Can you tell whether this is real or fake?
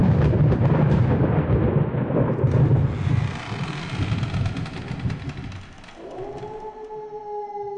real